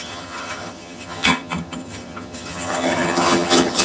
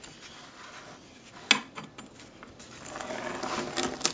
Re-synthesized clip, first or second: first